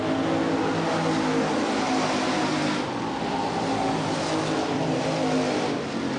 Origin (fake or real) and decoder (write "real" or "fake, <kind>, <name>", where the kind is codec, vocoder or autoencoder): real